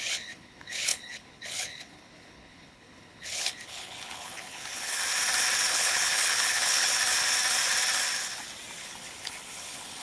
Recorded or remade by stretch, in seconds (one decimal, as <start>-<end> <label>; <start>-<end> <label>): 0.0-5.1 remade; 5.1-5.7 recorded; 5.7-6.9 remade; 6.9-8.8 recorded; 8.8-10.0 remade